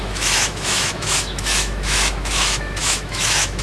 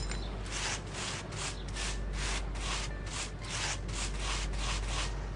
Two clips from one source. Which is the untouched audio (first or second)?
second